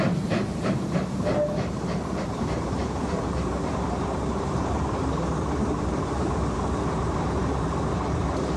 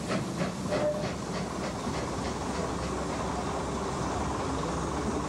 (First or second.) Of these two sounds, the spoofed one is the first